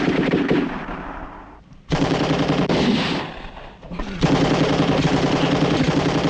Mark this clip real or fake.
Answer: fake